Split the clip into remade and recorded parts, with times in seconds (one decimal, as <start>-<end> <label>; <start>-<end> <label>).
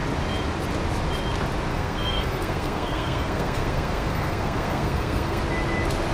0.0-1.7 recorded; 1.7-5.4 remade; 5.4-6.1 recorded